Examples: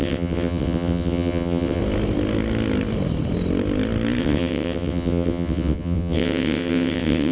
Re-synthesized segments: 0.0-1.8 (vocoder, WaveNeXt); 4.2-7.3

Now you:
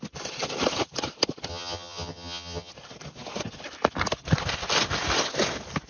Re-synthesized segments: 1.5-2.7 (vocoder, HiFi-GAN)

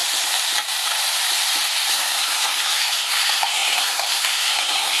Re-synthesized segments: 1.9-5.0 (codec, SNAC)